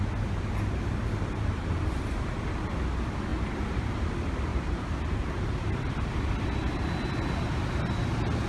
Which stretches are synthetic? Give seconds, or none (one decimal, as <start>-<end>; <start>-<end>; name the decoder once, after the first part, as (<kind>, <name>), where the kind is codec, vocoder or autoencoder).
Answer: 3.3-3.8 (vocoder, BigVGAN v2); 4.5-5.4